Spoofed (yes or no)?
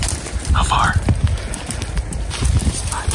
no